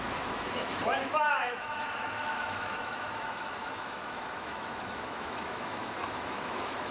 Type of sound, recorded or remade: remade